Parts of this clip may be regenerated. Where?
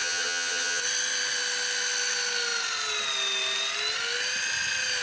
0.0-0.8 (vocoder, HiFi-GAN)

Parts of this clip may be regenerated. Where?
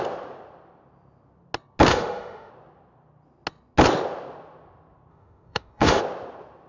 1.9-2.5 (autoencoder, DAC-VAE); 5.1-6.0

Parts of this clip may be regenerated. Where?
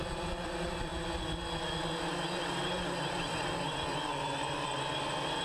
0.0-0.9 (vocoder, BigVGAN v2); 4.1-5.4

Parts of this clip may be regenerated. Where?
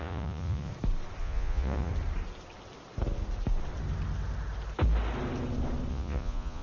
0.0-0.7 (vocoder, Vocos); 1.2-1.9; 5.9-6.6